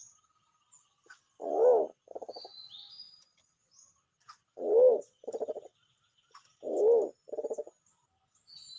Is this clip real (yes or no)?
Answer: yes